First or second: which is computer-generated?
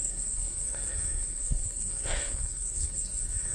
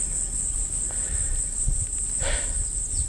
first